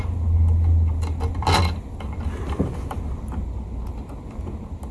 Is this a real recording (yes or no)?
yes